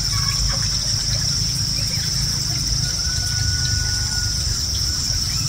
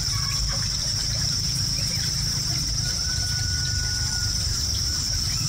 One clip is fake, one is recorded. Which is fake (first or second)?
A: second